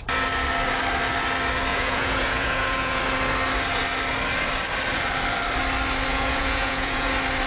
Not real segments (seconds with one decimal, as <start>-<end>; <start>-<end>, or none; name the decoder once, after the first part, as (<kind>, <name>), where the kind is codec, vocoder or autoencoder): 1.7-3.0 (vocoder, Vocos); 6.1-7.1